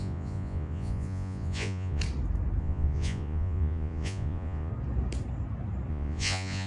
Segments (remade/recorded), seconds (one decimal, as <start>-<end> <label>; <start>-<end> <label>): 0.0-2.0 remade; 2.0-2.6 recorded; 2.6-4.7 remade; 4.7-5.9 recorded; 5.9-6.7 remade